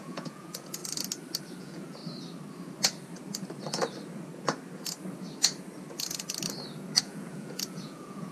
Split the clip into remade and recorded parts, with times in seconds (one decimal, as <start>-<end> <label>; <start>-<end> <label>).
0.0-0.8 remade; 0.8-1.6 recorded; 1.6-2.0 remade; 2.0-7.0 recorded; 7.0-8.3 remade